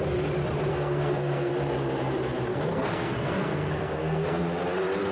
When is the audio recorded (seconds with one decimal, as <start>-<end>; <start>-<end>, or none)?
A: 0.0-0.7; 1.5-2.5; 4.4-5.1